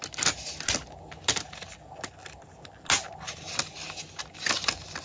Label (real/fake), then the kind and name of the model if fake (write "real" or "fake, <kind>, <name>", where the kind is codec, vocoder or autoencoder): real